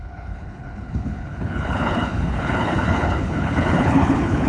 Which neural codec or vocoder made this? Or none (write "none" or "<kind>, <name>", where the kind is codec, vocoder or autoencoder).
codec, HILCodec